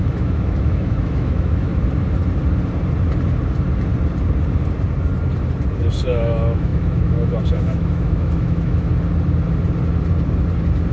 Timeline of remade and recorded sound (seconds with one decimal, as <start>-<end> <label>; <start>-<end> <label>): 0.0-1.7 remade; 1.7-6.0 recorded; 6.0-8.9 remade; 8.9-10.9 recorded